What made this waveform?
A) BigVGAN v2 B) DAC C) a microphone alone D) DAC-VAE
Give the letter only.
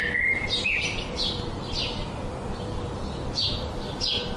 C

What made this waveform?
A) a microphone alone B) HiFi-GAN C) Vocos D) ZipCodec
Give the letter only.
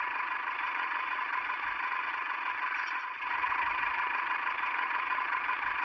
C